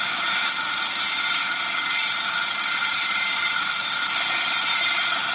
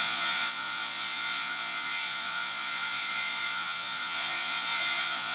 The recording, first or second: first